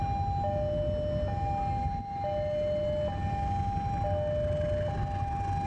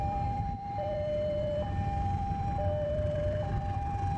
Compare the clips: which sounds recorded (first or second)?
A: first